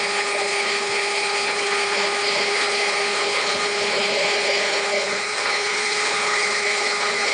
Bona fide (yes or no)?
no